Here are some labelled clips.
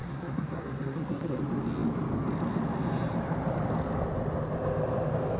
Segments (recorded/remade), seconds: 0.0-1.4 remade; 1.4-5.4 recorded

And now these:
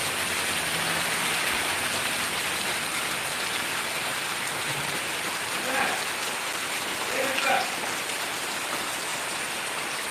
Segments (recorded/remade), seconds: 0.0-4.1 recorded; 4.1-5.6 remade; 5.6-10.1 recorded